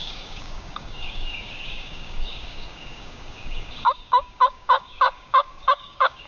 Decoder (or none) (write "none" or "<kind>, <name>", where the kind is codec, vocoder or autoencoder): codec, DAC